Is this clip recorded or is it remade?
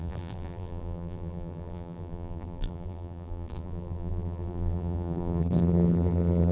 remade